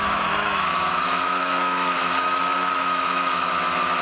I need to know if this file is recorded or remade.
remade